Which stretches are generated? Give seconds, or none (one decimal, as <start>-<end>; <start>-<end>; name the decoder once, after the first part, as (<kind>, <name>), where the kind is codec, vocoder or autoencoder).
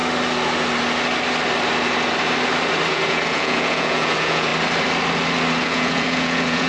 2.9-4.5 (vocoder, Vocos); 5.6-6.7